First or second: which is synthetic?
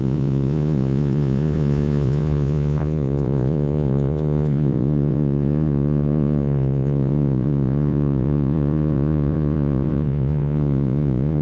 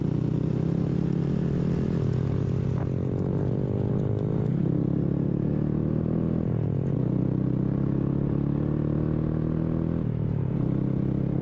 first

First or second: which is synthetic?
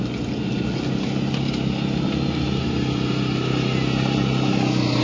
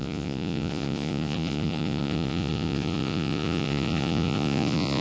second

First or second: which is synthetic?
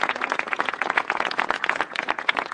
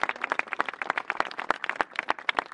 first